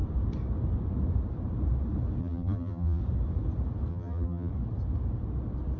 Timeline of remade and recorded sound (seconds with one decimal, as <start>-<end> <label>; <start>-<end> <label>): 0.0-2.2 recorded; 2.2-3.0 remade; 3.0-3.9 recorded; 3.9-4.5 remade; 4.5-5.8 recorded